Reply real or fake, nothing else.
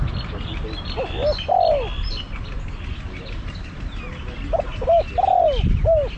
real